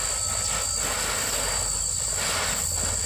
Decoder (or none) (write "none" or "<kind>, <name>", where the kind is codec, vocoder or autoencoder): none